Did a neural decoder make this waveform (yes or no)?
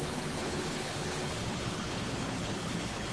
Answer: yes